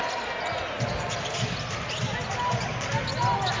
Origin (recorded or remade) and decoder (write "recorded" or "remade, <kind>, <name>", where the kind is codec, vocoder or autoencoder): recorded